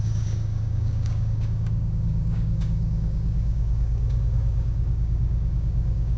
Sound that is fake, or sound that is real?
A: fake